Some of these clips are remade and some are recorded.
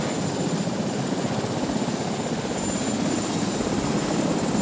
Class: recorded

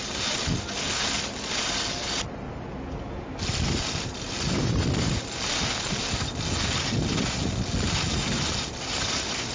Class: recorded